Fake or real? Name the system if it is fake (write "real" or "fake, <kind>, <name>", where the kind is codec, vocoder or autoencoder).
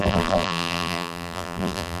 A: fake, vocoder, BigVGAN v2